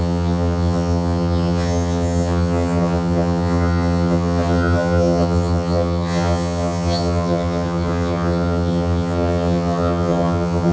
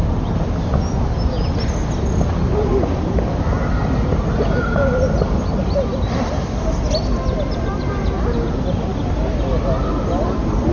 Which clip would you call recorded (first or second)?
second